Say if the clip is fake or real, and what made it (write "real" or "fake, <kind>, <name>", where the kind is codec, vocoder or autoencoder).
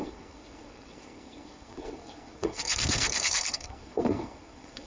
fake, codec, SNAC